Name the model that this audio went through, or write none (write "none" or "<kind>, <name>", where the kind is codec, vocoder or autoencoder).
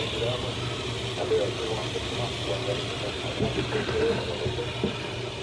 none